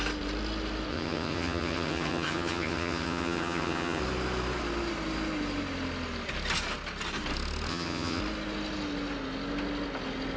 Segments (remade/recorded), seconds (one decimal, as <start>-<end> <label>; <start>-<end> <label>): 0.0-0.9 recorded; 0.9-4.0 remade; 4.0-7.7 recorded; 7.7-8.2 remade; 8.2-10.4 recorded